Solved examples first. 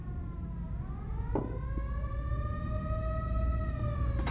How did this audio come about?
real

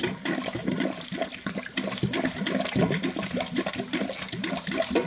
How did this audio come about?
real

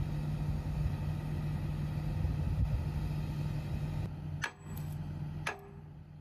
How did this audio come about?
real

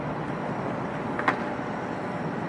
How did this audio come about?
real